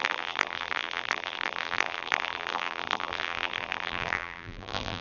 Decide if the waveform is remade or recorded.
remade